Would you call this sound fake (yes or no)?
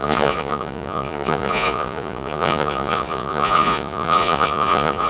yes